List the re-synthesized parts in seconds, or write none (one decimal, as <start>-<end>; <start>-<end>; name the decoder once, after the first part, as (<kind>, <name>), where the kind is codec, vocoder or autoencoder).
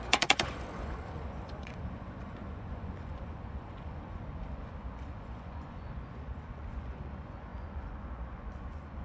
0.0-9.0 (vocoder, Vocos)